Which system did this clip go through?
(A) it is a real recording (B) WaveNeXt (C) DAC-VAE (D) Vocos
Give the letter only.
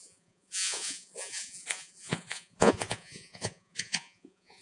D